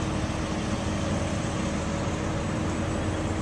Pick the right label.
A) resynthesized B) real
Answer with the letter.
B